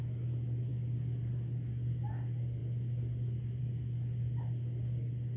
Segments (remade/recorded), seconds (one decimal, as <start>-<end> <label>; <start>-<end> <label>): 0.0-5.4 recorded